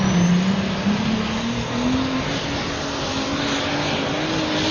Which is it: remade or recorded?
recorded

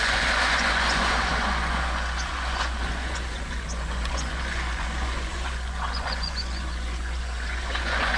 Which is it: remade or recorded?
remade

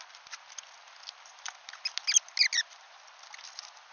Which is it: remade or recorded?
recorded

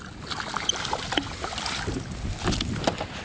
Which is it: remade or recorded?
recorded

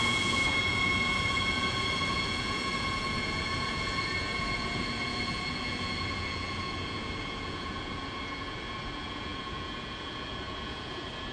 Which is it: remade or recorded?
remade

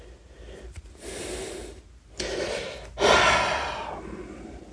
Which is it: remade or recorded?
recorded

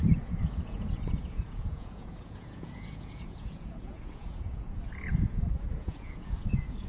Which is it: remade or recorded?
remade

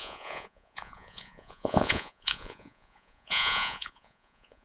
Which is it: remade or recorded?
remade